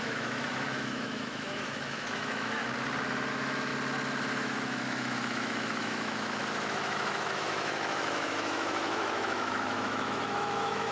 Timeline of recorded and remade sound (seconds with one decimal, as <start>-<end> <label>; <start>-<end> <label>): 0.0-2.6 remade; 2.6-3.3 recorded; 3.3-3.7 remade; 3.7-4.3 recorded; 4.3-10.9 remade